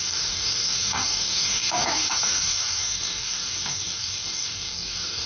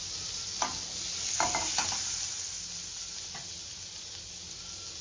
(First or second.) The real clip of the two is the second